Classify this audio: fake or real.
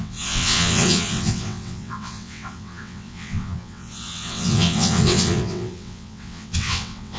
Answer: fake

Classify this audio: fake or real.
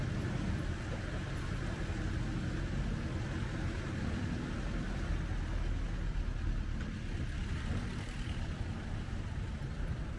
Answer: real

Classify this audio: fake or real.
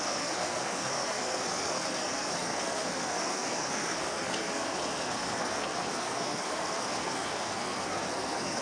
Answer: fake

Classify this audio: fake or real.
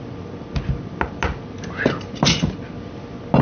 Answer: real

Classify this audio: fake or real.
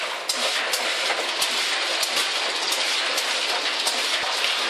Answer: real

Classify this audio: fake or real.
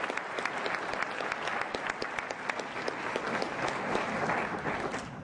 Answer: fake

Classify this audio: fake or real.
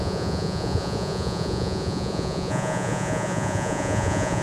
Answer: fake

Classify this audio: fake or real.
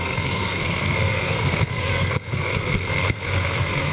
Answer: fake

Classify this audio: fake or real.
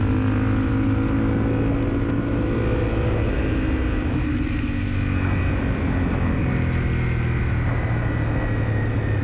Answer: real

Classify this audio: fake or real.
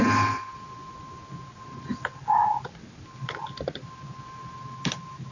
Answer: real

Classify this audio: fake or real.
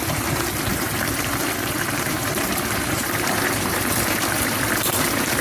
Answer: fake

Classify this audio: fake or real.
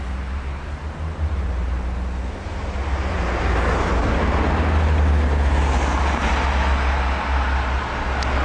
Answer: real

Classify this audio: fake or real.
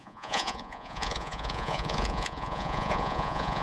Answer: fake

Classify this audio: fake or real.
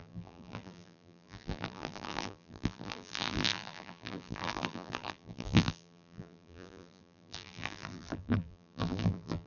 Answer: fake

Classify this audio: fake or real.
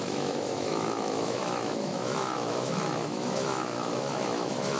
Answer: fake